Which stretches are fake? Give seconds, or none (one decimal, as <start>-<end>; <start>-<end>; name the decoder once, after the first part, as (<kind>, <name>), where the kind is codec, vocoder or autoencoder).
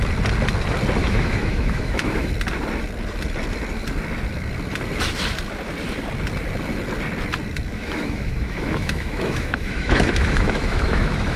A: 1.0-2.3 (autoencoder, DAC-VAE); 7.7-11.4